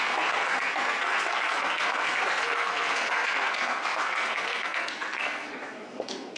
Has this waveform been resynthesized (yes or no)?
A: yes